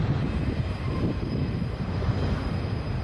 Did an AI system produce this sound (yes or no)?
yes